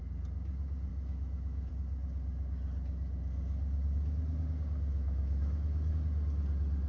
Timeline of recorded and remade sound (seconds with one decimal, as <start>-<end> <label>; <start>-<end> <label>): 0.0-0.9 recorded; 0.9-1.7 remade; 1.7-4.9 recorded; 4.9-5.9 remade; 5.9-6.9 recorded